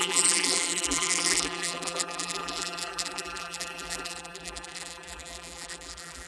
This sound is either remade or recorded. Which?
remade